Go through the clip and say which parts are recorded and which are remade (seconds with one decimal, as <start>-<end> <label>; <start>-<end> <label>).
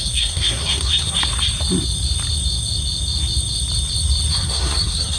0.0-1.2 remade; 1.2-4.3 recorded; 4.3-5.2 remade